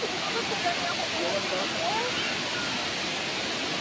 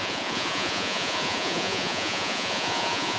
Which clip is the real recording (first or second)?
first